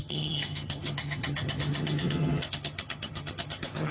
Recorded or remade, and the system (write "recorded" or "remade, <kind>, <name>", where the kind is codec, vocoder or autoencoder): remade, vocoder, HiFi-GAN